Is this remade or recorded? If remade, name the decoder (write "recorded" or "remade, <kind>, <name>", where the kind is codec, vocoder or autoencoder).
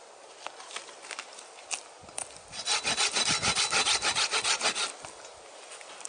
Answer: recorded